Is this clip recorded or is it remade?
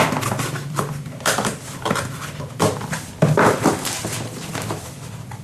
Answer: remade